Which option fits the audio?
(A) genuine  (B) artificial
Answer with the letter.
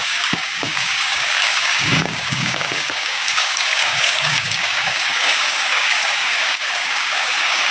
B